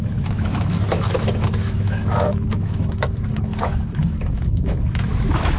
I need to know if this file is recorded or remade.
remade